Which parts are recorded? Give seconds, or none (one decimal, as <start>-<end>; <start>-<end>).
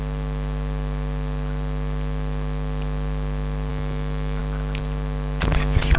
0.0-3.7; 4.4-6.0